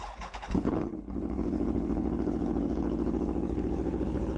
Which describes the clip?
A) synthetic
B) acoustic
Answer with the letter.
A